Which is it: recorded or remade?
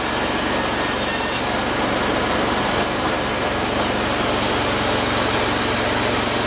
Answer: recorded